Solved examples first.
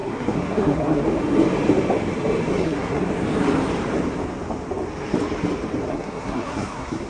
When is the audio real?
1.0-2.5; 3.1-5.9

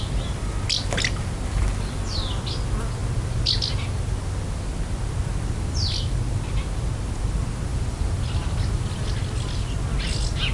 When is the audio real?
0.0-3.0; 3.9-7.7; 8.2-10.5

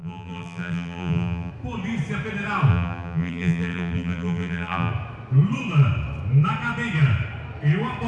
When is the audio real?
1.5-2.7; 4.9-8.1

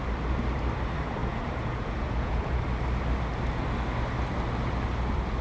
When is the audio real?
0.0-1.2; 2.6-5.4

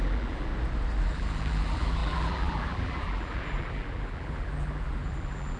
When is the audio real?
0.5-1.0

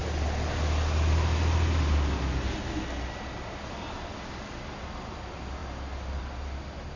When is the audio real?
0.0-7.0

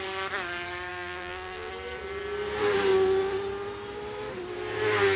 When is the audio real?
0.0-0.9; 1.7-5.2